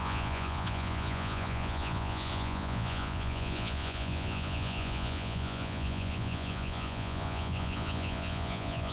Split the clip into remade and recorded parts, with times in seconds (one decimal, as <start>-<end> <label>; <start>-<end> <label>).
0.0-8.9 remade